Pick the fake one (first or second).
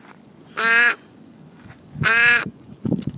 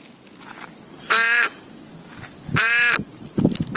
first